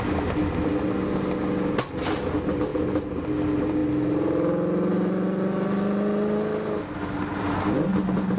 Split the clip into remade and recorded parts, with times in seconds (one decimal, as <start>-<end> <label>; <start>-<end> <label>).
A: 0.0-2.7 recorded; 2.7-3.3 remade; 3.3-8.4 recorded